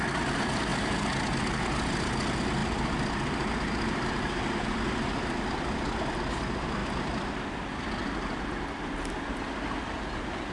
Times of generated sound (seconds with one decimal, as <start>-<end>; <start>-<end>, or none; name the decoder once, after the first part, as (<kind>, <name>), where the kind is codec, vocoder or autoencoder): none